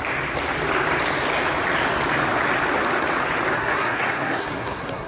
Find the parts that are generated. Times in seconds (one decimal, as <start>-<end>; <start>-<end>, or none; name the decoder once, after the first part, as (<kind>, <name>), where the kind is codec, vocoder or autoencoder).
3.6-5.1 (codec, SNAC)